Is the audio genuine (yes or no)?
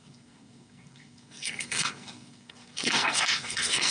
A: no